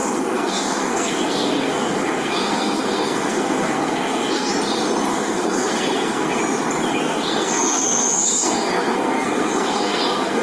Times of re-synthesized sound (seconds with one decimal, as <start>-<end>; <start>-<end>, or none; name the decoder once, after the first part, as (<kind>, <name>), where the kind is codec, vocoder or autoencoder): 0.0-4.5 (codec, SNAC); 5.1-6.4; 6.9-10.4